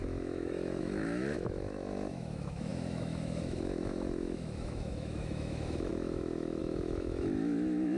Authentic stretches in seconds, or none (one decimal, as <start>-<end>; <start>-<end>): none